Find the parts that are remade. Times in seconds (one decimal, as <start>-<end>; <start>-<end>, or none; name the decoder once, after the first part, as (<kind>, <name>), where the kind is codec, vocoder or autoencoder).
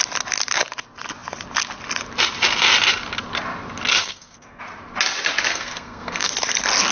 4.0-4.6 (codec, SNAC); 5.5-6.3